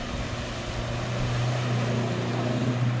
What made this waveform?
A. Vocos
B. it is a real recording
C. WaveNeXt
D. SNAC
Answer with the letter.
B